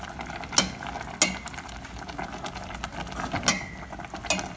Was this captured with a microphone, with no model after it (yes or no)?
yes